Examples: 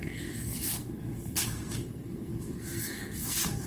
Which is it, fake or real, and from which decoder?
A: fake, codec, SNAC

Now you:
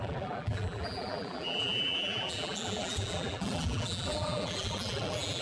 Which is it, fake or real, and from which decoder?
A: fake, vocoder, BigVGAN v2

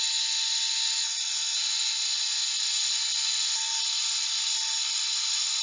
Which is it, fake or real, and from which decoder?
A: real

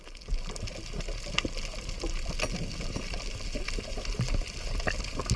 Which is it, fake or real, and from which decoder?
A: real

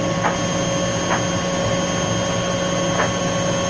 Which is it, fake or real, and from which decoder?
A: real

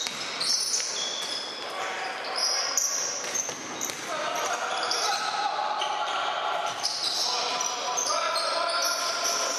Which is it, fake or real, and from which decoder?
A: real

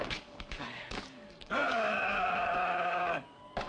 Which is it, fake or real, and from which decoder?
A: fake, codec, DAC